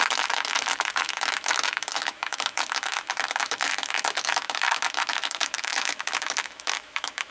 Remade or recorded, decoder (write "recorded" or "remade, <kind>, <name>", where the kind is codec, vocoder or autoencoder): remade, autoencoder, DAC-VAE